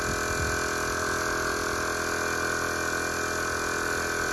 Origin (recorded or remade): recorded